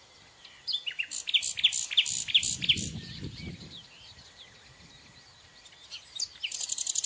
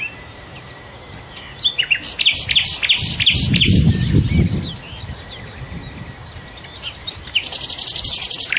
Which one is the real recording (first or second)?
second